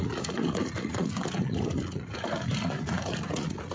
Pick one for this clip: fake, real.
fake